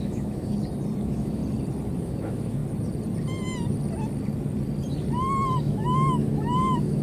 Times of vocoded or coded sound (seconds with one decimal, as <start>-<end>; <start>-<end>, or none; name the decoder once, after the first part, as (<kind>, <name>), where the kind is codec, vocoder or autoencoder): 0.0-0.5 (autoencoder, DAC-VAE); 1.0-1.4; 2.0-2.6; 5.6-7.0